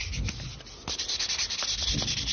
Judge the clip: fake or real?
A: real